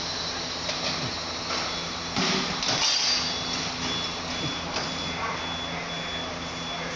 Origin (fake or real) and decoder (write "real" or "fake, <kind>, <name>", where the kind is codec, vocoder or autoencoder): real